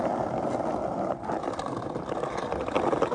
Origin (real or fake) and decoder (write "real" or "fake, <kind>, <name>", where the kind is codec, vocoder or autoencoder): real